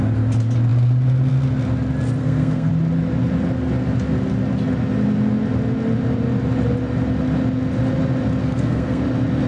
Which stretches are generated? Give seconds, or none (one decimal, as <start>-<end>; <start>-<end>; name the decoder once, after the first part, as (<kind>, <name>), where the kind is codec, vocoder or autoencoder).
2.2-2.7 (codec, SNAC); 8.4-9.0